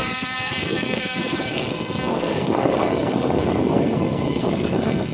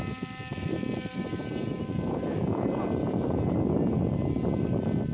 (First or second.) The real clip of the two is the second